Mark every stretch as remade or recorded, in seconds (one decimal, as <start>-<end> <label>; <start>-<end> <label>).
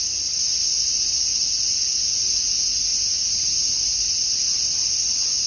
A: 0.0-5.5 recorded